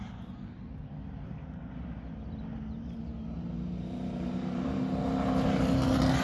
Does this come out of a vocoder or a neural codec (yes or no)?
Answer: no